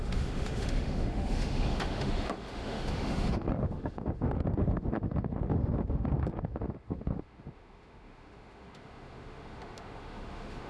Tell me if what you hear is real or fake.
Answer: fake